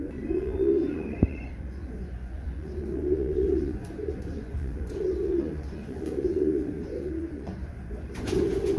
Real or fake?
fake